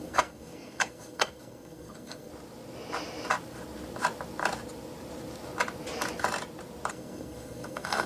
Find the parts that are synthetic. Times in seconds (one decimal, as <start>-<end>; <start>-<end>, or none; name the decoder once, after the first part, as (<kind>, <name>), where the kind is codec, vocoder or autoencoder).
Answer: 0.0-2.3 (codec, SNAC); 6.9-8.1